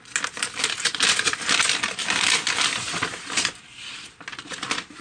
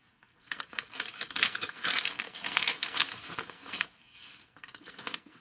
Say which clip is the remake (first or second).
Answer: second